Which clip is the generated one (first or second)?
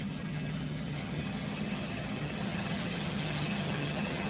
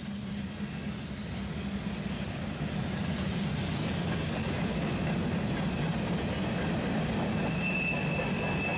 first